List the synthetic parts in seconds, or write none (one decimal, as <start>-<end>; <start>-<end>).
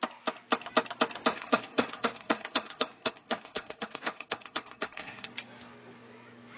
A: 1.3-5.3